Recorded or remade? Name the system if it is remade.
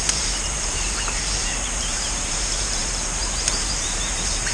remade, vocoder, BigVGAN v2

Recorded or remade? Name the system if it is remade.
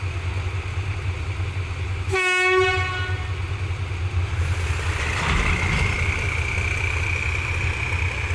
recorded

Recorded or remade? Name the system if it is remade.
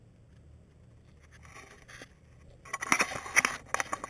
recorded